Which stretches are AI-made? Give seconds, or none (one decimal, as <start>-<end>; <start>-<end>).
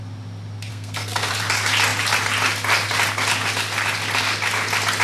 0.7-1.3